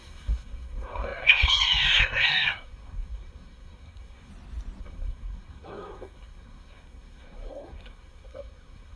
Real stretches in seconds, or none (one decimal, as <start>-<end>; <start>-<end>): 4.3-4.8

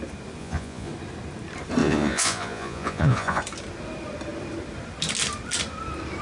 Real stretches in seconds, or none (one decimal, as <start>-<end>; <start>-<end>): 0.0-0.4; 0.9-1.8; 3.4-6.2